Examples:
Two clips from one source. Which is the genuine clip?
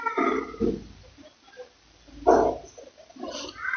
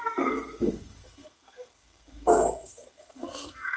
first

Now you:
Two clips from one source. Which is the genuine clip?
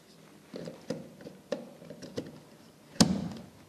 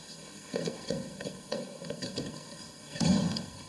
first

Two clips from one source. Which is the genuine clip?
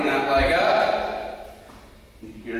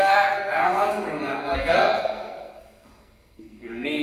first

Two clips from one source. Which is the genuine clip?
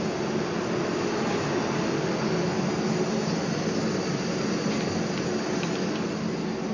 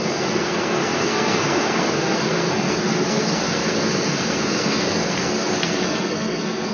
first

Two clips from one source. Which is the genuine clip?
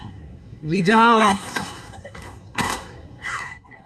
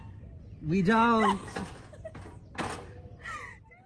second